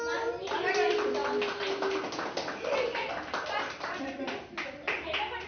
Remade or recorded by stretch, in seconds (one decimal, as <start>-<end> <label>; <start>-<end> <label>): 0.0-5.5 recorded